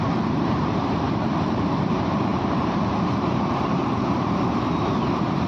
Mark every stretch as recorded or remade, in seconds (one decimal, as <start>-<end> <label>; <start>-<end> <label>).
0.0-5.5 remade